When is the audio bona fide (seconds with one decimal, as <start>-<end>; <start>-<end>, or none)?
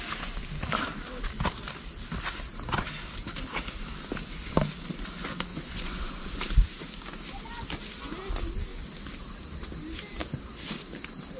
0.0-5.5; 6.4-11.4